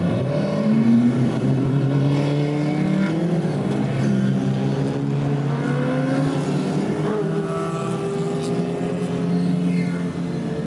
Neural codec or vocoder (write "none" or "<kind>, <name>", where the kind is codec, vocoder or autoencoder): none